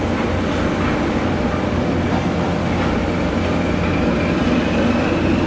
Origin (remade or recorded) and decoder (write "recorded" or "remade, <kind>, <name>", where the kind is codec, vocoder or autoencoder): recorded